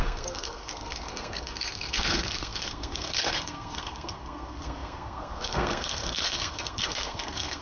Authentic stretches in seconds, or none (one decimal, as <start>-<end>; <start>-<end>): none